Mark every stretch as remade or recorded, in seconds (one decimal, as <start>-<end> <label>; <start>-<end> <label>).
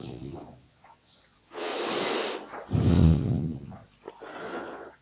0.0-1.7 remade; 1.7-2.9 recorded; 2.9-3.8 remade; 3.8-4.4 recorded; 4.4-5.0 remade